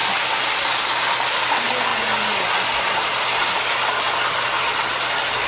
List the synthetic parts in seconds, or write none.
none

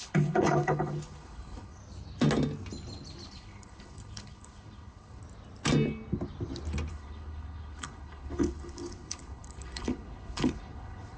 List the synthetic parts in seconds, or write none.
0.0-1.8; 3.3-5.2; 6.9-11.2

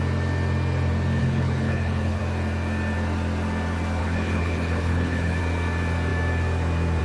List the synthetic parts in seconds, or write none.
1.2-2.2; 4.0-5.4

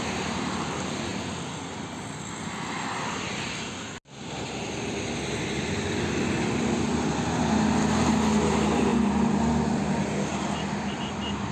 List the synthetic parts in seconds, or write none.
none

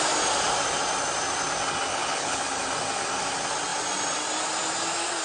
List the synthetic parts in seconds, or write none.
1.9-2.4